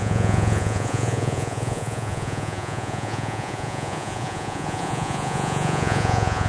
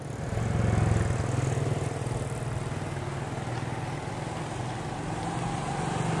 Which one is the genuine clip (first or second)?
second